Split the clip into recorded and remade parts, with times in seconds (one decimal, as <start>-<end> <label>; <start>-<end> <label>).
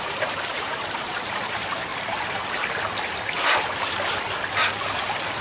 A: 0.0-1.9 remade; 1.9-5.4 recorded